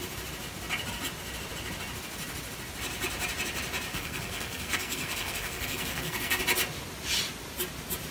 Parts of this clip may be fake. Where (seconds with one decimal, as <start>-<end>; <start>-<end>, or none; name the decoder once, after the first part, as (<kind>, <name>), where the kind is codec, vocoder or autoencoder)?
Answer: 3.9-6.4 (codec, SNAC)